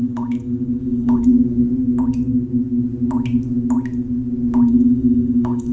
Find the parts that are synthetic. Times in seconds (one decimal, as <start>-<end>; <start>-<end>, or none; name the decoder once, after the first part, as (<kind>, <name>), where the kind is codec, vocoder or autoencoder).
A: 0.0-1.3 (codec, DAC); 4.7-5.7